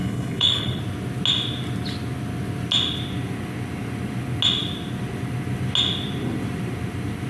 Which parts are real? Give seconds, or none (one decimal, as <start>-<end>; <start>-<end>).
0.8-7.3